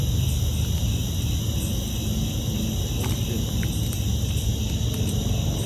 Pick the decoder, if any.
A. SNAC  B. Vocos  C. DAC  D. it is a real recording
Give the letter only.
D